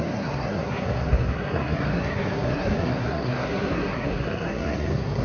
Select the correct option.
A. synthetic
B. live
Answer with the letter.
A